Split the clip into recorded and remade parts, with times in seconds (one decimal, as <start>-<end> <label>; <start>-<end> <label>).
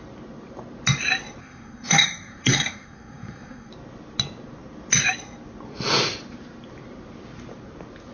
0.0-1.4 recorded; 1.4-3.7 remade; 3.7-8.1 recorded